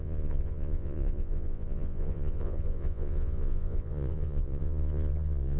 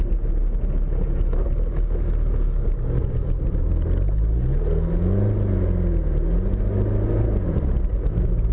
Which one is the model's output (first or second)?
first